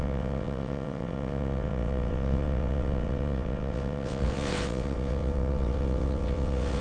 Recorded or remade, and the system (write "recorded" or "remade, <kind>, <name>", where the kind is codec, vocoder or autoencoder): remade, vocoder, WaveNeXt